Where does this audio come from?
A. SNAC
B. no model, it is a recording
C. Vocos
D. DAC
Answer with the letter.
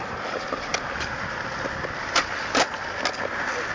B